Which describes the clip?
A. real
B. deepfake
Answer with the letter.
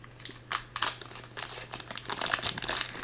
A